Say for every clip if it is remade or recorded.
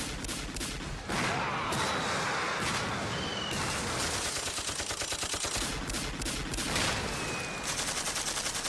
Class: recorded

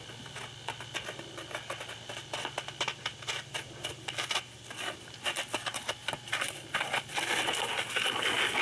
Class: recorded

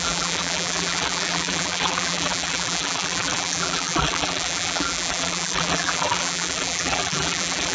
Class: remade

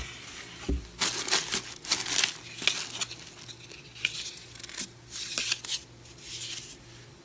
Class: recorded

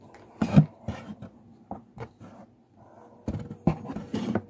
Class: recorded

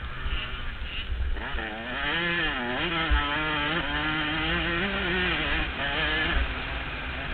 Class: recorded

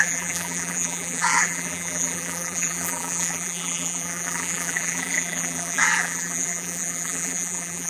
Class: remade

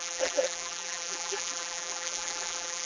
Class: remade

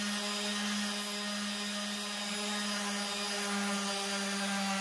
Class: recorded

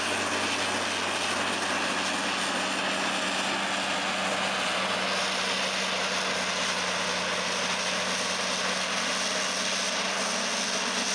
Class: recorded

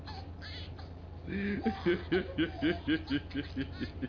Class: recorded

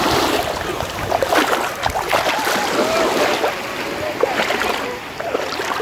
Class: recorded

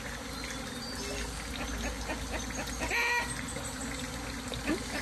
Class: recorded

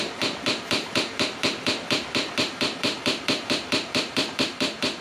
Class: remade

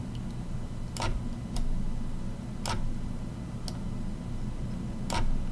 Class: recorded